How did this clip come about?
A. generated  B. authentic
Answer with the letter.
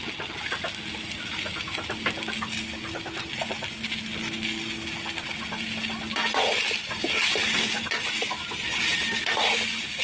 B